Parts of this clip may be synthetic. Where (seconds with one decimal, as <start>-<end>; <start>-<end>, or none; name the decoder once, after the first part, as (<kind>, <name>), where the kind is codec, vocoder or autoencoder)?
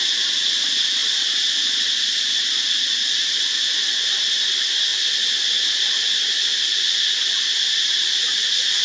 none